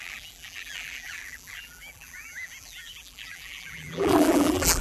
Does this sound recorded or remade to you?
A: remade